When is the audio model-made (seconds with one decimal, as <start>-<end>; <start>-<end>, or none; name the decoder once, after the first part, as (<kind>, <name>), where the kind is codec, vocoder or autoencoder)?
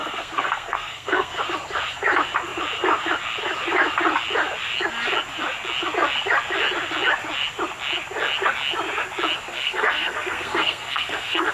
0.0-1.3 (codec, SNAC); 9.5-11.5